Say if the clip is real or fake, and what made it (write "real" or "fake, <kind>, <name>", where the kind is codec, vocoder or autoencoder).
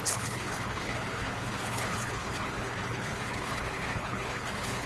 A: fake, codec, HILCodec